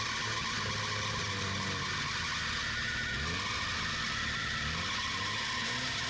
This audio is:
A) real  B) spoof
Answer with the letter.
A